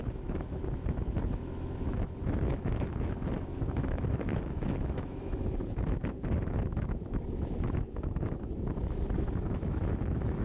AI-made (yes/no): yes